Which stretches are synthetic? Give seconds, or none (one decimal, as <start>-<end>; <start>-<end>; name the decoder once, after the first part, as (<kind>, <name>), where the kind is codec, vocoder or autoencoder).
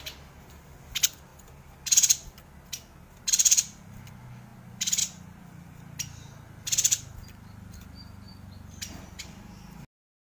none